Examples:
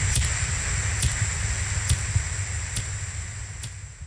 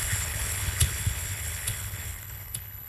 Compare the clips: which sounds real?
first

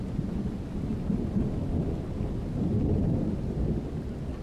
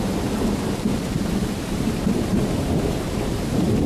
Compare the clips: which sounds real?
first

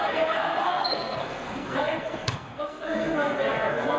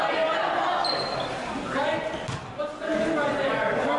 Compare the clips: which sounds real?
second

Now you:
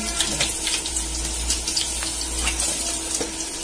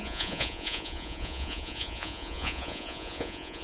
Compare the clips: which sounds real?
first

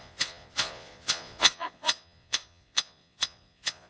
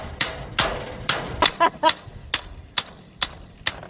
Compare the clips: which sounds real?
second